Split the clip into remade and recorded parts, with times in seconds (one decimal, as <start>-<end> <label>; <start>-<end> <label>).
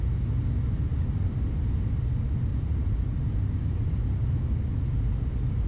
0.0-2.5 recorded; 2.5-3.9 remade; 3.9-5.7 recorded